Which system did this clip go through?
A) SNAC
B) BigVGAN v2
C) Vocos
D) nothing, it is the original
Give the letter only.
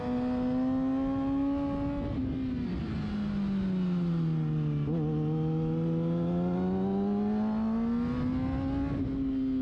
D